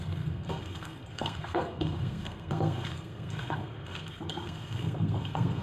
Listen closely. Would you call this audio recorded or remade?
remade